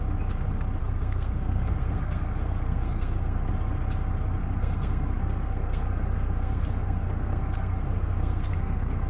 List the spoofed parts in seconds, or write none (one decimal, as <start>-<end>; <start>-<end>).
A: 0.8-3.5; 4.4-9.1